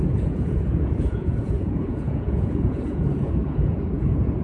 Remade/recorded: remade